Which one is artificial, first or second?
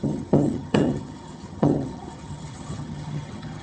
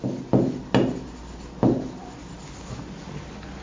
first